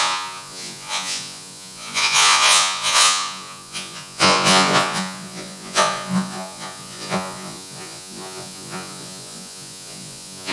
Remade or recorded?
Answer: remade